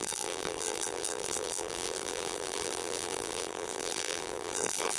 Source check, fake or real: fake